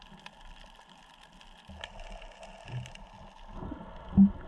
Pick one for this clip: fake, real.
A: real